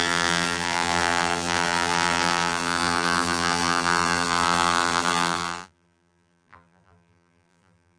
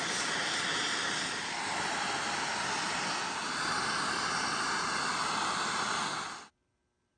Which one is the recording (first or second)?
second